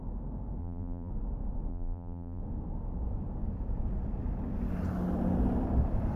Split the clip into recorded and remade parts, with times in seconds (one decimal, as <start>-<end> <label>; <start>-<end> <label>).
0.0-0.6 recorded; 0.6-1.1 remade; 1.1-1.7 recorded; 1.7-2.4 remade; 2.4-6.2 recorded

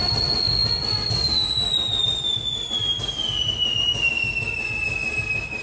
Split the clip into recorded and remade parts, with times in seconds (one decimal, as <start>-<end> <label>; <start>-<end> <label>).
0.0-5.6 recorded

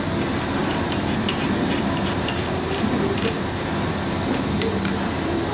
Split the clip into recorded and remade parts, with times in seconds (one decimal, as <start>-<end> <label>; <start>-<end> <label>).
0.0-0.6 recorded; 0.6-3.9 remade; 3.9-5.5 recorded

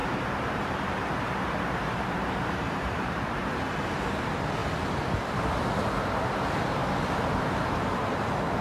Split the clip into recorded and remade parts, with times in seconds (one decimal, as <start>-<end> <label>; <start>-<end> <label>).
0.0-3.6 remade; 3.6-8.6 recorded

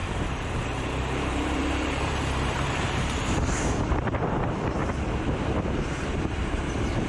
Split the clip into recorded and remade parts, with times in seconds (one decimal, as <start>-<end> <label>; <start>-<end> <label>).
0.0-4.8 remade; 4.8-5.7 recorded; 5.7-7.1 remade

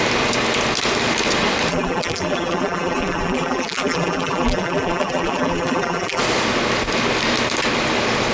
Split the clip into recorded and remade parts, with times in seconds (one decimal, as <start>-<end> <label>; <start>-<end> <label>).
0.0-1.7 recorded; 1.7-6.2 remade; 6.2-8.3 recorded

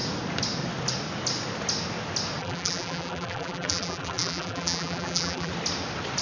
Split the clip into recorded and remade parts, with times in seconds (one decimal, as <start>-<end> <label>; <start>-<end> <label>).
0.0-2.4 recorded; 2.4-5.5 remade; 5.5-6.2 recorded